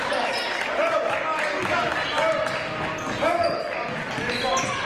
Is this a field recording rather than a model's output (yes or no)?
yes